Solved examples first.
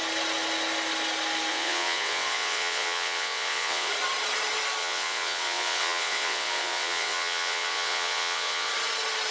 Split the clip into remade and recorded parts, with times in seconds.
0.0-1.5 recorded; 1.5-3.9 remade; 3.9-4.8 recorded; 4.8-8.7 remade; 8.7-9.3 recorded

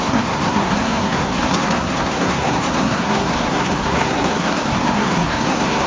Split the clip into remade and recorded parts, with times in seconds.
0.0-5.9 remade

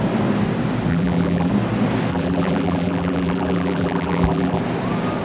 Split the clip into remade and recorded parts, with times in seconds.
0.0-0.9 recorded; 0.9-1.5 remade; 1.5-2.1 recorded; 2.1-4.6 remade; 4.6-5.2 recorded

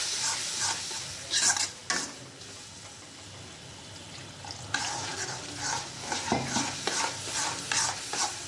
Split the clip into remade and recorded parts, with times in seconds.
0.0-8.5 recorded

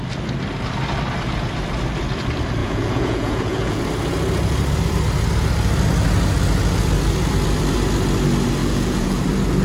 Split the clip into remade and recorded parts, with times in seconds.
0.0-2.6 recorded; 2.6-3.8 remade; 3.8-8.6 recorded; 8.6-9.2 remade; 9.2-9.6 recorded

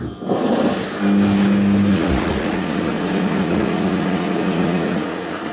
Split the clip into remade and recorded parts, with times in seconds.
0.0-1.9 recorded; 1.9-5.5 remade

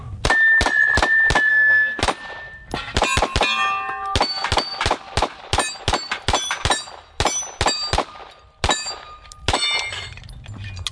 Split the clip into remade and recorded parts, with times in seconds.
0.0-1.5 recorded; 1.5-2.0 remade; 2.0-10.9 recorded